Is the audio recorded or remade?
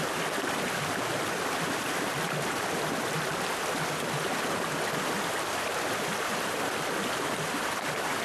remade